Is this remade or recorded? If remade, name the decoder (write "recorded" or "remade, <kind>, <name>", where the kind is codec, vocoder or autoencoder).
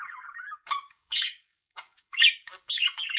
remade, codec, DAC